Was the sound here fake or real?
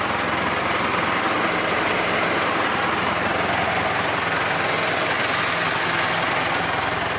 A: real